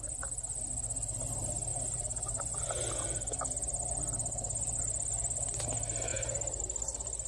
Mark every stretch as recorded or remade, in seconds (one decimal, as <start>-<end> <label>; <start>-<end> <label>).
0.0-1.7 recorded; 1.7-5.6 remade; 5.6-6.1 recorded; 6.1-6.6 remade; 6.6-7.3 recorded